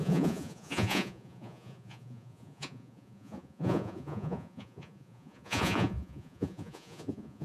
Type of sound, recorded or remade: remade